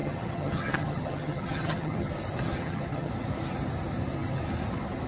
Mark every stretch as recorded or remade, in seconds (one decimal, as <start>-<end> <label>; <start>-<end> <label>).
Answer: 0.0-2.1 remade; 2.1-2.6 recorded; 2.6-3.1 remade; 3.1-5.1 recorded